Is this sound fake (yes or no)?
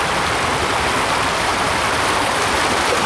no